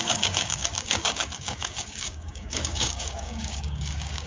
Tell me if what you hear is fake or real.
fake